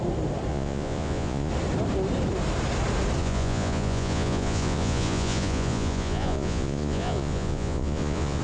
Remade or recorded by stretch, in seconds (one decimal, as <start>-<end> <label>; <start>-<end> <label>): 0.0-0.5 recorded; 0.5-1.5 remade; 1.5-3.2 recorded; 3.2-8.4 remade